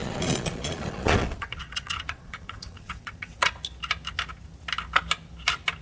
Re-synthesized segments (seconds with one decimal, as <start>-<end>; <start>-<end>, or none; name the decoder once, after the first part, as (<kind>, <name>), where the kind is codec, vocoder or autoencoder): 0.0-3.5 (vocoder, Vocos)